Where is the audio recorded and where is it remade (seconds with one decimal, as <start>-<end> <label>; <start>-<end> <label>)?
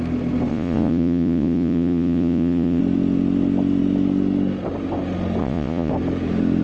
0.0-0.5 recorded; 0.5-2.8 remade; 2.8-5.4 recorded; 5.4-5.9 remade; 5.9-6.6 recorded